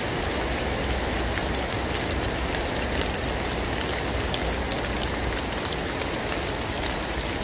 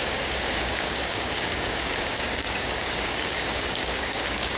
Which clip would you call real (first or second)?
first